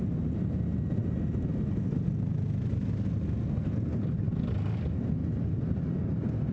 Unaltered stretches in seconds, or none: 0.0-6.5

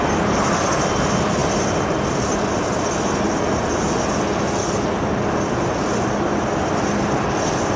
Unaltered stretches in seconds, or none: 0.0-7.8

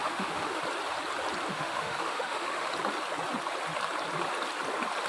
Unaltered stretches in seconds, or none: 0.6-1.5; 2.7-5.1

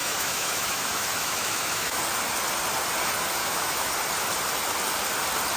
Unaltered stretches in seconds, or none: 2.0-3.4; 3.9-5.6

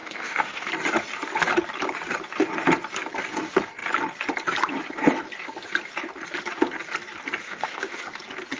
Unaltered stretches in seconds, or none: 0.7-7.4; 8.0-8.6

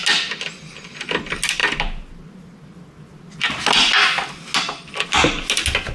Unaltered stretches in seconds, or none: 0.0-5.9

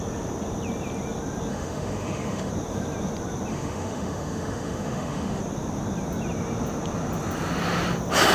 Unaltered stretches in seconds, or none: 0.0-1.5; 2.5-3.5; 5.4-8.3

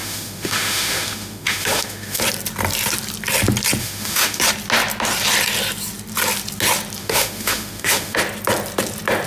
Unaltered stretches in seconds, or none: 2.2-3.8; 4.4-7.0; 8.2-9.3